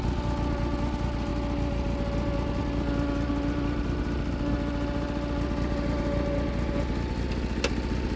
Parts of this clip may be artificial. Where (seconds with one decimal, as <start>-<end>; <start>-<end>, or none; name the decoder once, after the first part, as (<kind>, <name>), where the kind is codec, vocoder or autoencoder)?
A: none